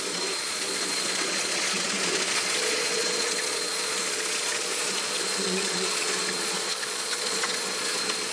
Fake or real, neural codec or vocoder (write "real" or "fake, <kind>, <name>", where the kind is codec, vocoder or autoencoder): fake, vocoder, Vocos